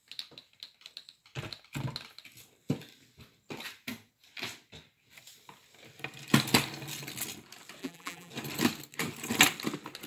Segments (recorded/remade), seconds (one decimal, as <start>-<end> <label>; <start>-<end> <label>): 0.0-7.8 recorded; 7.8-8.3 remade; 8.3-10.1 recorded